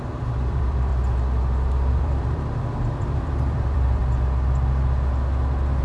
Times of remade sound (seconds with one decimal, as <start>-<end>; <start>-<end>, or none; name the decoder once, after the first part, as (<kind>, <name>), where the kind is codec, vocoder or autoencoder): 0.0-0.9 (vocoder, BigVGAN v2); 1.9-4.0

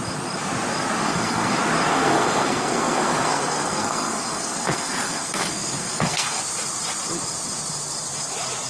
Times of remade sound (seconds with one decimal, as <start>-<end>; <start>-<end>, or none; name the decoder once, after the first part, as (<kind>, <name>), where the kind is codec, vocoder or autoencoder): 1.0-1.5 (codec, SNAC); 1.9-6.4

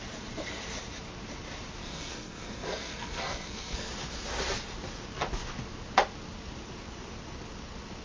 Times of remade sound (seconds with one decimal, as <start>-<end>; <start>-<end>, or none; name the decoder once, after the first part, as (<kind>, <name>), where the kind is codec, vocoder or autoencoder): 1.8-3.9 (codec, SNAC)

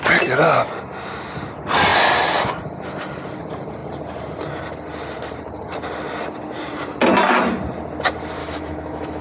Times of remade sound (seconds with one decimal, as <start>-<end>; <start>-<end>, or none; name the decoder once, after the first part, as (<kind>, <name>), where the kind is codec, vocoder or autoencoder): 8.4-9.2 (autoencoder, DAC-VAE)

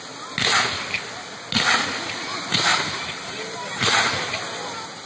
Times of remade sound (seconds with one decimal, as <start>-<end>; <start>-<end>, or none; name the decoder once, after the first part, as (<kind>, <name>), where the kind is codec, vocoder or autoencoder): 2.7-4.3 (vocoder, BigVGAN v2)